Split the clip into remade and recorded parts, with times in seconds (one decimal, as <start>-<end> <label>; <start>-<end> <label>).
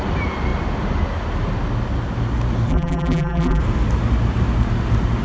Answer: 0.0-2.7 recorded; 2.7-3.6 remade; 3.6-5.2 recorded